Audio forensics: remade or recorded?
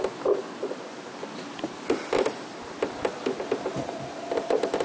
recorded